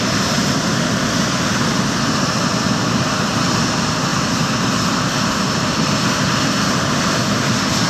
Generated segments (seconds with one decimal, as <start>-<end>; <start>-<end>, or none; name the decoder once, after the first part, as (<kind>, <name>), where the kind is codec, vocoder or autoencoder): none